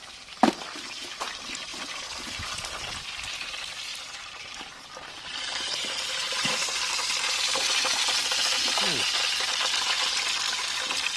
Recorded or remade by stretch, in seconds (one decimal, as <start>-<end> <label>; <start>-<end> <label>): 0.0-3.9 recorded; 3.9-7.8 remade; 7.8-11.2 recorded